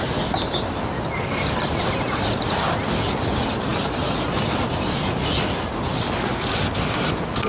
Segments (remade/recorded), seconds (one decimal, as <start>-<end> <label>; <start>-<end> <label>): 0.0-7.5 recorded